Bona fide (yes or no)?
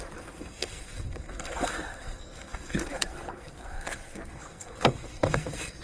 no